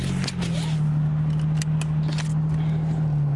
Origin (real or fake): real